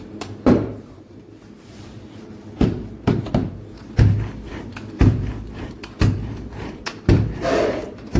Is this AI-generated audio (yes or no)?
yes